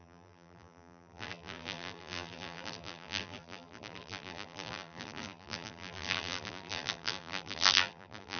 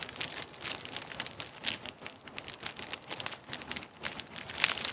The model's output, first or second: first